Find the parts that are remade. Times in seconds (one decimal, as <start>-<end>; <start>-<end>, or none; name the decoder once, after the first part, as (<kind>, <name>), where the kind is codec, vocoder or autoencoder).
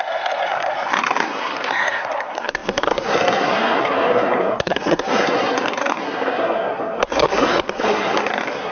0.0-8.7 (codec, SNAC)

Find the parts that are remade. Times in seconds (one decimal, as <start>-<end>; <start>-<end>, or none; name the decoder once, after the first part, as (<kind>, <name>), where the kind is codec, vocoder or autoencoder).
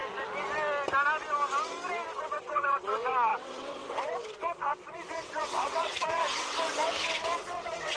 2.2-8.0 (vocoder, WaveNeXt)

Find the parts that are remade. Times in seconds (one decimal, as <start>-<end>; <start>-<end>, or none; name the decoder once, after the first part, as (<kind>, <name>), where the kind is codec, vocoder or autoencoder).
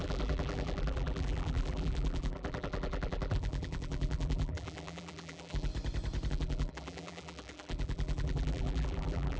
0.0-5.7 (vocoder, BigVGAN v2); 6.3-9.4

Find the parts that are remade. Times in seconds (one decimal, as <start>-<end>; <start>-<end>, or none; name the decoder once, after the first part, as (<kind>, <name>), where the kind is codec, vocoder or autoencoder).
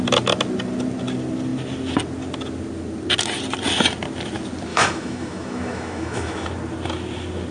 4.7-6.5 (autoencoder, DAC-VAE)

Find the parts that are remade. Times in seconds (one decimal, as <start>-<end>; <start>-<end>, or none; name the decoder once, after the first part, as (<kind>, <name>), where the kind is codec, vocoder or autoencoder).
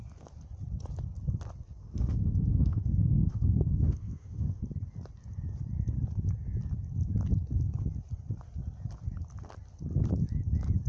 1.8-4.6 (autoencoder, DAC-VAE)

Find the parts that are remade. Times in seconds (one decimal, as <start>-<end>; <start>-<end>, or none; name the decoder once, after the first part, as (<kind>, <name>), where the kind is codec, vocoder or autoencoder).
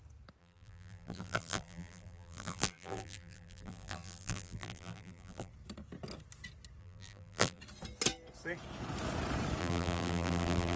0.4-5.5 (vocoder, BigVGAN v2); 6.8-7.6; 9.6-10.8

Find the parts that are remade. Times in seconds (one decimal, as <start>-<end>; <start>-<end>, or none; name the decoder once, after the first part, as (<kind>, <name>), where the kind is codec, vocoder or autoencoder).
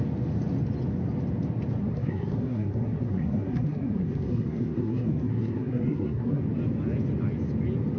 1.8-6.4 (codec, SNAC)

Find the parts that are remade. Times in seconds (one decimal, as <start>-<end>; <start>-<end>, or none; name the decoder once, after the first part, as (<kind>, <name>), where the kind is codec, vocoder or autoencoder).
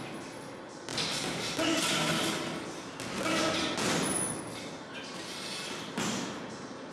none